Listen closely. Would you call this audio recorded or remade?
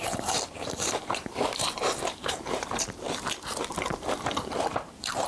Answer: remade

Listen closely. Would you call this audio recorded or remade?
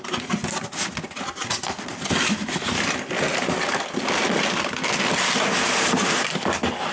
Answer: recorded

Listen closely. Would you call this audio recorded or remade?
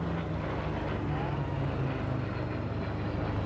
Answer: recorded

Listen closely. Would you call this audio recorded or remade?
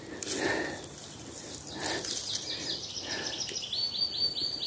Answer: recorded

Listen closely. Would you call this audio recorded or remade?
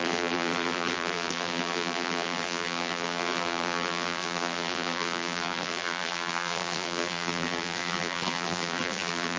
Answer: remade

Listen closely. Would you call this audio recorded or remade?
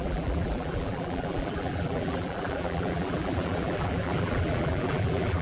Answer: remade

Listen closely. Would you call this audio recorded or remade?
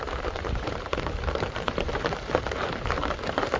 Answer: remade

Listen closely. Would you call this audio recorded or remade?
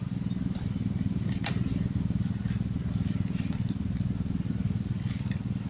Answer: recorded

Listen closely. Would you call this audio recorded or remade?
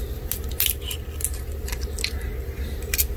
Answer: recorded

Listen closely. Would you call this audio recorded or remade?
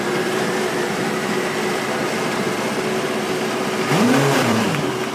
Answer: remade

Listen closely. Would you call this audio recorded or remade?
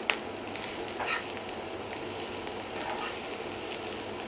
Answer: recorded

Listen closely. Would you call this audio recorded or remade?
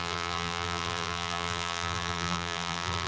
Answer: remade